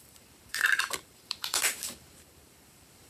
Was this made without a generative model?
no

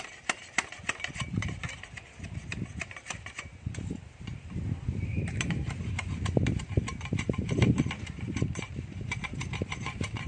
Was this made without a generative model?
no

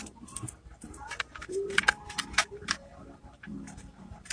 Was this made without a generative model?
no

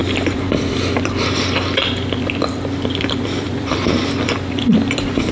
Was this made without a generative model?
no